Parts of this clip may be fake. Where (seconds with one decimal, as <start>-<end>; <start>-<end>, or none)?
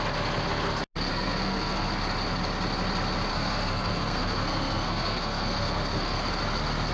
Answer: 1.1-1.9; 3.3-6.3